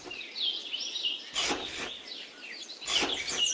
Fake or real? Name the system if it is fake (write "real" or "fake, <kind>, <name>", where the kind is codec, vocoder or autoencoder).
real